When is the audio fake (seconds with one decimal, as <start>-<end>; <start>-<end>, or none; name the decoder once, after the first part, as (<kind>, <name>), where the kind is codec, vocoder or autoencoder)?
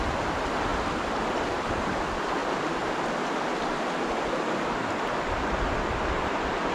0.7-1.8 (vocoder, BigVGAN v2)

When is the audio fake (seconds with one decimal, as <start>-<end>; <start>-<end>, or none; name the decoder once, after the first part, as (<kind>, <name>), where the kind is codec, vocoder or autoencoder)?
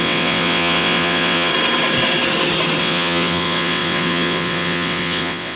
0.0-1.5 (vocoder, WaveNeXt); 2.8-5.6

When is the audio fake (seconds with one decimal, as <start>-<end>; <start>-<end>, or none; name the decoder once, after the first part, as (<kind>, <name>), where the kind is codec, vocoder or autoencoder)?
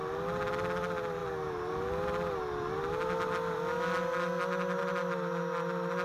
none